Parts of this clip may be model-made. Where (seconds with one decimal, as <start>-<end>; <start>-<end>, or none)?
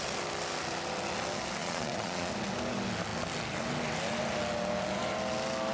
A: 1.6-2.3